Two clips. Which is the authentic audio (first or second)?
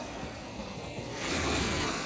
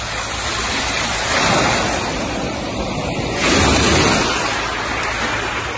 second